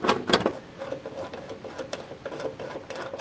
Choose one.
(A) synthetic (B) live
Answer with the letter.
B